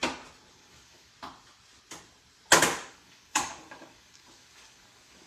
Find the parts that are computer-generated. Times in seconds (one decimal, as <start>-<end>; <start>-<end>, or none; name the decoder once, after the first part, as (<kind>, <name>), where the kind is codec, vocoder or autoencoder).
0.5-1.1 (codec, DAC); 2.9-5.3